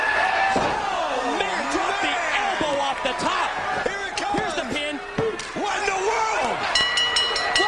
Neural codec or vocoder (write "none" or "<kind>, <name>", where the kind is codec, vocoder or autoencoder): none